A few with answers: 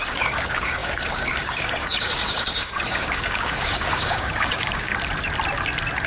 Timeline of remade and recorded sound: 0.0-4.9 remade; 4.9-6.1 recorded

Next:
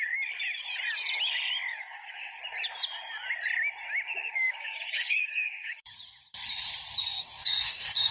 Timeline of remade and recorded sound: 0.0-1.7 recorded; 1.7-2.4 remade; 2.4-4.3 recorded; 4.3-6.0 remade; 6.0-7.0 recorded; 7.0-8.1 remade

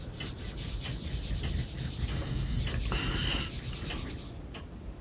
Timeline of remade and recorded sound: 0.0-2.1 recorded; 2.1-2.6 remade; 2.6-5.0 recorded